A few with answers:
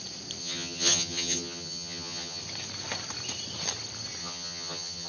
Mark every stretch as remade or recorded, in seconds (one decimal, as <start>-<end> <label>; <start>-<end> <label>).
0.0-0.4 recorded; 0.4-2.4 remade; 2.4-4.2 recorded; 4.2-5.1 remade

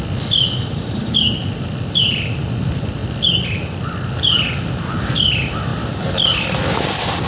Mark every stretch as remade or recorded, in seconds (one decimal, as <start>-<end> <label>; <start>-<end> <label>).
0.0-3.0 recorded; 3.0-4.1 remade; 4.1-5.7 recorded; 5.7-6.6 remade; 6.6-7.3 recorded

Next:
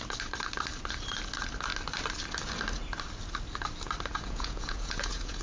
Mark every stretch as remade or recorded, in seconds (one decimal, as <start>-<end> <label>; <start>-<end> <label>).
0.0-4.1 recorded; 4.1-5.4 remade

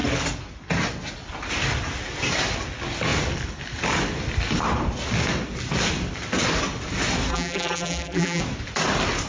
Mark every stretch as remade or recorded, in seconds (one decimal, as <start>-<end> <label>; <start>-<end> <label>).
0.0-7.3 recorded; 7.3-8.4 remade; 8.4-9.3 recorded

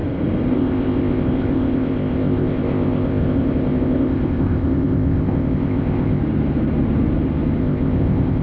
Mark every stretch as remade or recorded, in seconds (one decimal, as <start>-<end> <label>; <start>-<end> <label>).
0.0-0.5 recorded; 0.5-6.2 remade; 6.2-7.6 recorded; 7.6-8.4 remade

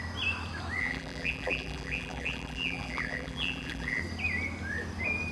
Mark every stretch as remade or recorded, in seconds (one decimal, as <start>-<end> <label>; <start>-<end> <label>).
0.0-0.8 recorded; 0.8-4.0 remade; 4.0-5.3 recorded

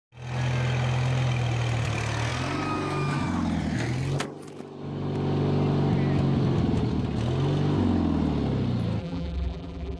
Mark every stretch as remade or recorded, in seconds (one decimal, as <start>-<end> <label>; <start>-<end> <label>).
0.0-9.0 recorded; 9.0-10.0 remade